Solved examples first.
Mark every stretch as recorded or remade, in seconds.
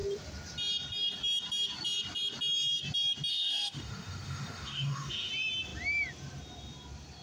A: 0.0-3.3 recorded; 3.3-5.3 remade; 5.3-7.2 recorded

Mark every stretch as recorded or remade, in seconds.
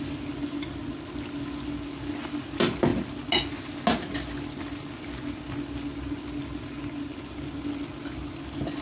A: 0.0-8.8 recorded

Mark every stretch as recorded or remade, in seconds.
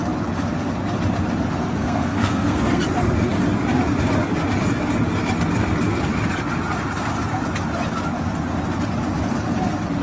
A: 0.0-1.6 recorded; 1.6-2.8 remade; 2.8-10.0 recorded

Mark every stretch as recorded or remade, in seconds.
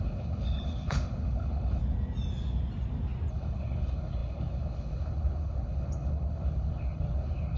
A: 0.0-1.8 remade; 1.8-3.3 recorded; 3.3-7.6 remade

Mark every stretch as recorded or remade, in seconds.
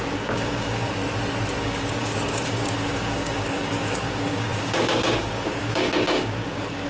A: 0.0-1.0 remade; 1.0-1.6 recorded; 1.6-6.9 remade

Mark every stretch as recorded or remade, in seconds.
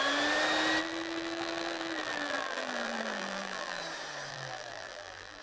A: 0.0-0.8 recorded; 0.8-3.8 remade; 3.8-4.3 recorded; 4.3-5.4 remade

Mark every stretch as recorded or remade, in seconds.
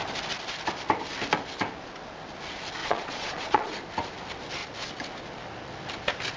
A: 0.0-2.8 recorded; 2.8-3.8 remade; 3.8-6.4 recorded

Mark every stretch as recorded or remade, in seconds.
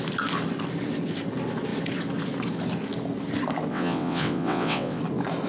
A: 0.0-3.7 recorded; 3.7-5.0 remade; 5.0-5.5 recorded